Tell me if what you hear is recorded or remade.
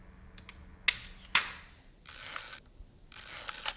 recorded